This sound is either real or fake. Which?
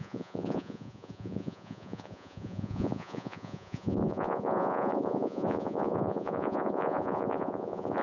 fake